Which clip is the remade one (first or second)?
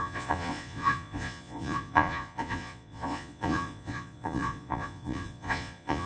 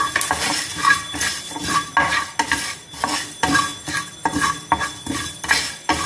first